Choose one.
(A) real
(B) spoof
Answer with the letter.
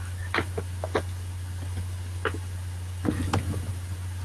A